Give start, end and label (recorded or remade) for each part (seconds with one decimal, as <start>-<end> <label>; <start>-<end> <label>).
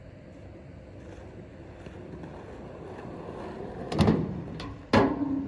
0.0-5.5 recorded